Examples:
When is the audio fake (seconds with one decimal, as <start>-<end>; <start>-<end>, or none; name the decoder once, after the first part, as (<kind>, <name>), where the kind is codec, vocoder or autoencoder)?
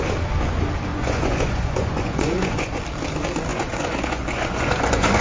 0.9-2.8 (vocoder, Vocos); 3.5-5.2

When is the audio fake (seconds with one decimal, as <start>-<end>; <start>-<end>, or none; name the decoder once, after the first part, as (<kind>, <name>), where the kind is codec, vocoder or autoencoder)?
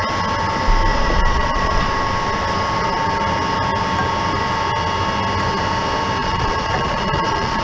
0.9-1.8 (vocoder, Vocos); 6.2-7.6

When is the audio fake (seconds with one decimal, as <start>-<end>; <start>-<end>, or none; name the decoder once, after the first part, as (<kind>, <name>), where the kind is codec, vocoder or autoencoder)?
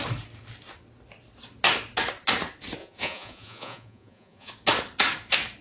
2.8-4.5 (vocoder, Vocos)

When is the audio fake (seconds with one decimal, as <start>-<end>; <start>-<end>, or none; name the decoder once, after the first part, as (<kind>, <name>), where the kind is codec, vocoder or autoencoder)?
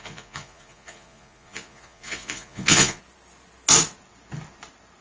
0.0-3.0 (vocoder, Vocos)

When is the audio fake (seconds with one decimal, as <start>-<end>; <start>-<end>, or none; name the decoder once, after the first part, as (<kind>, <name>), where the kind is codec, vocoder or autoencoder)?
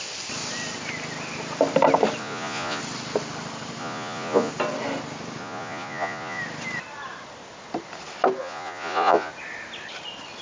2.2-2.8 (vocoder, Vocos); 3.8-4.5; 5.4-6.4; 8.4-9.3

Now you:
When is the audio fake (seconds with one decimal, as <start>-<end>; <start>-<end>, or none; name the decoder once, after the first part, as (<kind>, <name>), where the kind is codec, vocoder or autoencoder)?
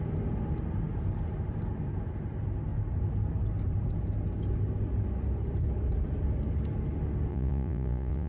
7.3-8.3 (vocoder, Vocos)